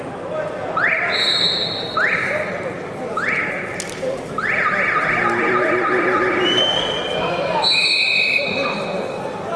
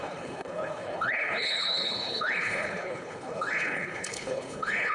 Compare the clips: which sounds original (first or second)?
first